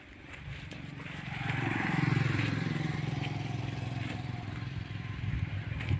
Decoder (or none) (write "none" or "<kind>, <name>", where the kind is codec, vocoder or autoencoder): vocoder, BigVGAN v2